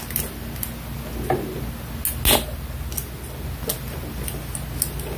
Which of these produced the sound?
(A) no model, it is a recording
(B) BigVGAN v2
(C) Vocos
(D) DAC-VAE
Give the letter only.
A